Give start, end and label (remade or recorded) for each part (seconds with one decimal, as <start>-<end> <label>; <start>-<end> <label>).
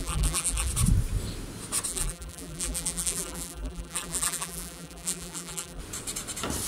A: 0.0-0.7 remade; 0.7-1.9 recorded; 1.9-5.8 remade; 5.8-6.7 recorded